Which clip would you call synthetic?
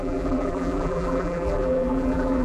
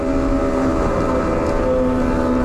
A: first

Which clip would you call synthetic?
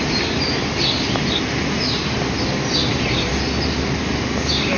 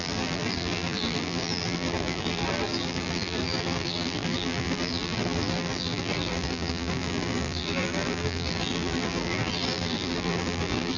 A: second